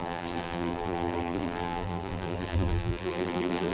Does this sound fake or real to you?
fake